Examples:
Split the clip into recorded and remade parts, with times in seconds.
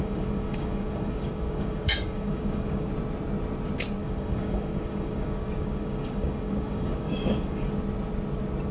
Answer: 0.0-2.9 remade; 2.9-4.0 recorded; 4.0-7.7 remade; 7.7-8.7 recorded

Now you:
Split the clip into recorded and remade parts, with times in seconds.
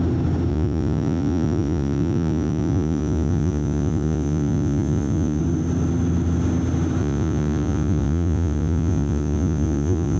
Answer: 0.0-0.5 recorded; 0.5-5.4 remade; 5.4-7.0 recorded; 7.0-10.2 remade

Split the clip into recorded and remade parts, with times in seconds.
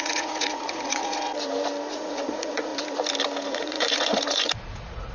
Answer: 0.0-1.3 remade; 1.3-1.9 recorded; 1.9-2.7 remade; 2.7-3.5 recorded; 3.5-5.1 remade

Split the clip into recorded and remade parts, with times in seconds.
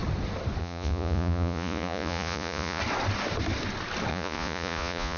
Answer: 0.0-0.6 recorded; 0.6-2.8 remade; 2.8-4.1 recorded; 4.1-5.2 remade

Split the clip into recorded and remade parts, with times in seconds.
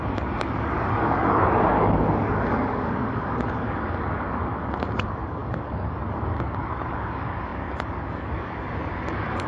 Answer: 0.0-9.5 remade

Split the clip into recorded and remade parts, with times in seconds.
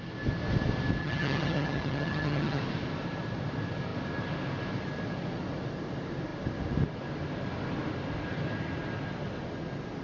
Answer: 0.0-1.0 recorded; 1.0-2.6 remade; 2.6-10.0 recorded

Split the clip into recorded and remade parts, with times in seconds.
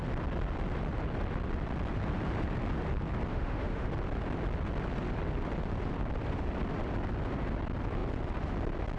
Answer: 0.0-3.3 recorded; 3.3-3.9 remade; 3.9-9.0 recorded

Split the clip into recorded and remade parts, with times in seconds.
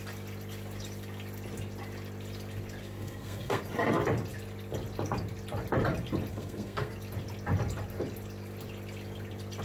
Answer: 0.0-2.8 recorded; 2.8-3.6 remade; 3.6-6.3 recorded; 6.3-6.9 remade; 6.9-9.6 recorded